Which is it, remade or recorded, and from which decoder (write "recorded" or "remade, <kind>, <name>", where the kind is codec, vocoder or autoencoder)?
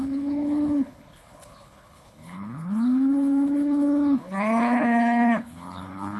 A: remade, codec, HILCodec